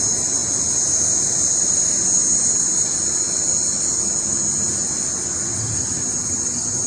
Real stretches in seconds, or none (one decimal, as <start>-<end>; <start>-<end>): 0.0-6.9